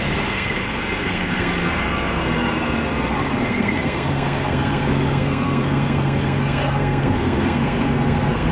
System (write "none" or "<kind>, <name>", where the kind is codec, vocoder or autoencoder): codec, SNAC